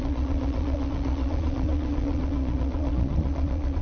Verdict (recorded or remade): remade